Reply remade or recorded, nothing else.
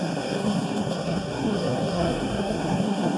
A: remade